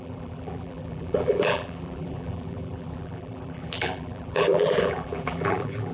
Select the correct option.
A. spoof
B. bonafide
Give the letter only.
A